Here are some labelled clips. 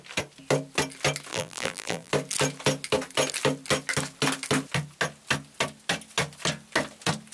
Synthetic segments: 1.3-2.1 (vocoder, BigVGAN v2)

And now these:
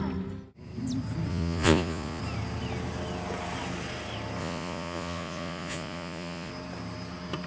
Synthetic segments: 1.3-2.2 (vocoder, Vocos); 4.4-6.5

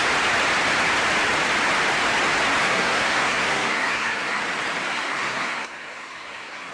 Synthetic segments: 2.6-4.4 (codec, SNAC); 4.9-6.7

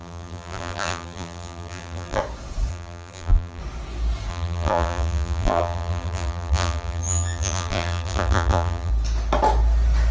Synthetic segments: 0.0-2.2 (vocoder, BigVGAN v2); 2.7-3.6; 4.3-8.9

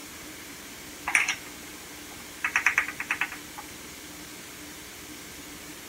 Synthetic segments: 0.0-0.7 (vocoder, BigVGAN v2)

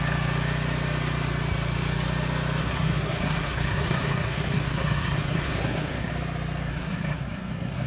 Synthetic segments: 2.6-6.1 (codec, SNAC); 6.7-7.9

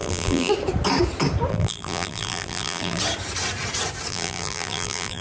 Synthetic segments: 0.0-0.5 (vocoder, BigVGAN v2); 1.5-3.0; 4.1-5.2

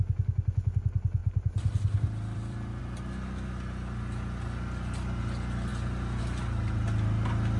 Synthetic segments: 1.2-2.8 (vocoder, BigVGAN v2)